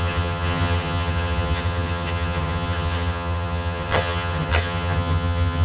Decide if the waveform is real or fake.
fake